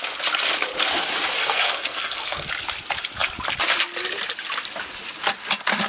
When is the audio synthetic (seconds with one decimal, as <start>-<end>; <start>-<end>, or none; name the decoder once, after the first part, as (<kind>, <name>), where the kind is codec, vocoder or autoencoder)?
1.4-2.5 (codec, SNAC)